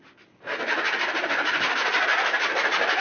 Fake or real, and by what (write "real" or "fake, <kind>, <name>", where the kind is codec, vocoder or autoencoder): real